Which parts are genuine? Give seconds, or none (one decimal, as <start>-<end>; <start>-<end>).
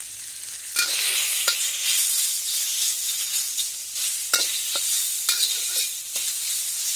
0.0-7.0